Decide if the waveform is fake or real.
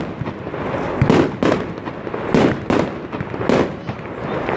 real